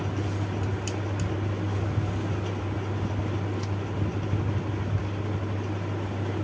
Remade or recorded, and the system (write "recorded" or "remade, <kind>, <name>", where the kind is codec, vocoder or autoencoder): recorded